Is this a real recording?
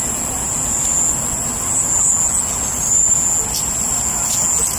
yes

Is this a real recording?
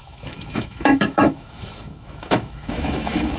no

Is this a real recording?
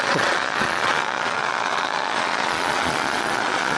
no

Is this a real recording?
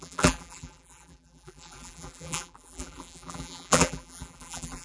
no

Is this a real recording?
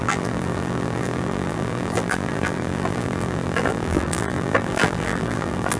no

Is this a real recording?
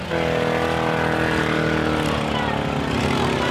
yes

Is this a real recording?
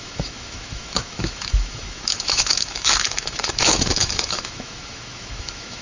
no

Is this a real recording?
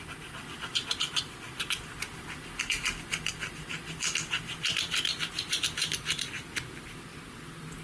yes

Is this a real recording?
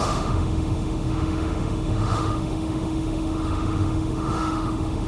no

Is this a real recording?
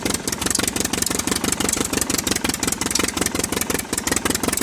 yes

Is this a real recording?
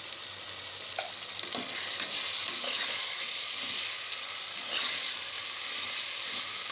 yes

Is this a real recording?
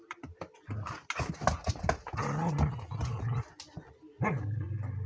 yes